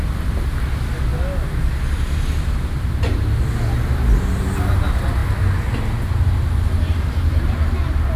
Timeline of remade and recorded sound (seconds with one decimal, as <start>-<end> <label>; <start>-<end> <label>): 0.0-8.2 recorded

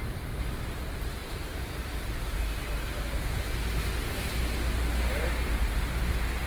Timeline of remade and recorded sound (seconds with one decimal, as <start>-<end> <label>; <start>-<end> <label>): 0.0-3.0 remade; 3.0-6.1 recorded; 6.1-6.5 remade

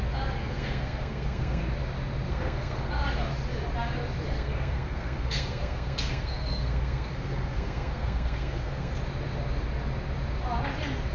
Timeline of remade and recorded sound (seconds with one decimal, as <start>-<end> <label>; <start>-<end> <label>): 0.0-0.4 recorded; 0.4-1.6 remade; 1.6-2.3 recorded; 2.3-2.9 remade; 2.9-4.3 recorded; 4.3-9.0 remade; 9.0-11.1 recorded

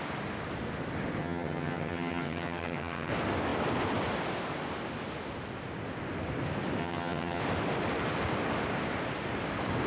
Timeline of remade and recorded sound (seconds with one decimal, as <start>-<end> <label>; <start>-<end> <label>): 0.0-1.2 recorded; 1.2-3.1 remade; 3.1-6.8 recorded; 6.8-7.4 remade; 7.4-9.9 recorded

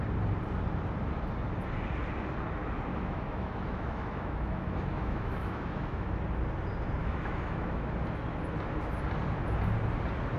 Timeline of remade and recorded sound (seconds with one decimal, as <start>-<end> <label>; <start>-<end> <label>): 0.0-2.9 recorded; 2.9-6.1 remade; 6.1-7.0 recorded; 7.0-7.9 remade; 7.9-10.4 recorded

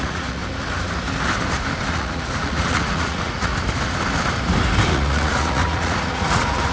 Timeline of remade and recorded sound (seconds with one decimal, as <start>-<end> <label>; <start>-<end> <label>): 0.0-0.4 remade; 0.4-1.9 recorded; 1.9-3.5 remade; 3.5-4.9 recorded; 4.9-6.7 remade

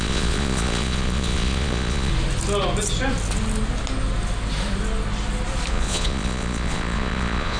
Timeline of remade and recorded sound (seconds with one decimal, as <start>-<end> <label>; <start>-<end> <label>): 0.0-2.1 remade; 2.1-5.7 recorded; 5.7-7.6 remade